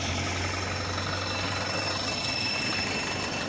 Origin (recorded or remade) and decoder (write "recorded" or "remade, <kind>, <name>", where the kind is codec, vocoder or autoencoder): recorded